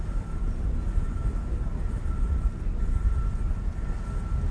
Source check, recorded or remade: recorded